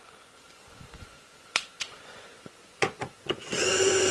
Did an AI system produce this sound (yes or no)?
yes